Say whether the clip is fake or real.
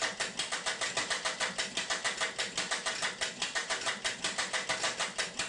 real